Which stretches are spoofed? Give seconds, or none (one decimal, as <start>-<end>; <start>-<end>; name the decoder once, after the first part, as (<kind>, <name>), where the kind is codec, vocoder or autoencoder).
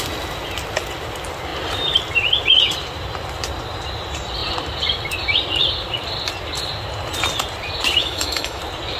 8.0-8.6 (autoencoder, DAC-VAE)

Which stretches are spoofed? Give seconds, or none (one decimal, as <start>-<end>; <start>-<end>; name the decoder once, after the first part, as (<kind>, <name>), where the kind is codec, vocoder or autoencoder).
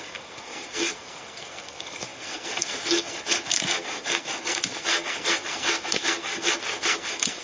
0.0-7.4 (codec, SNAC)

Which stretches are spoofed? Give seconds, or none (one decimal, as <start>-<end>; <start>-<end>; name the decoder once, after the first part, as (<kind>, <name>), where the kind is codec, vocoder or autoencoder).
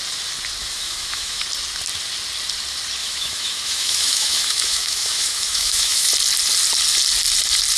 0.6-1.4 (autoencoder, DAC-VAE); 3.0-6.1